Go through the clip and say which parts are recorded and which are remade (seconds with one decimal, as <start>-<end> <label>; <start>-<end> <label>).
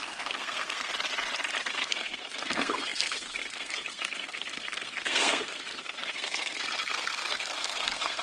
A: 0.0-0.9 remade; 0.9-1.6 recorded; 1.6-8.2 remade